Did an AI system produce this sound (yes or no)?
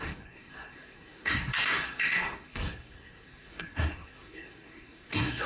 yes